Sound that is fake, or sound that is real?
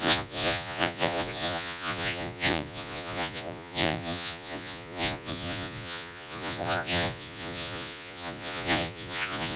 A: fake